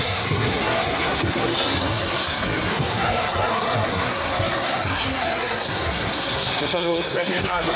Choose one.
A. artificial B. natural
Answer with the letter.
A